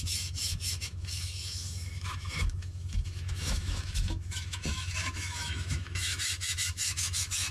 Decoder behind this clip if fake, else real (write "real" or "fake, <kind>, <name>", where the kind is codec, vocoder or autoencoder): fake, autoencoder, DAC-VAE